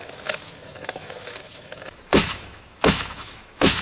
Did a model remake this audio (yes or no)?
yes